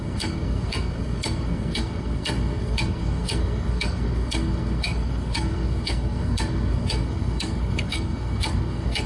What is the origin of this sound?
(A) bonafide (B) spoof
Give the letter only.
B